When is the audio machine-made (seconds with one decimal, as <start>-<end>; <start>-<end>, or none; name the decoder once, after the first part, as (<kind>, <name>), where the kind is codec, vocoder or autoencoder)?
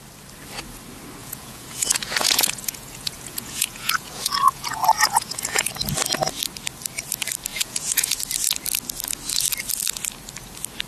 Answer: 1.2-5.7 (vocoder, Vocos); 7.5-8.2